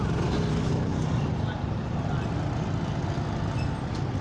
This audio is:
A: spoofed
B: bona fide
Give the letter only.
B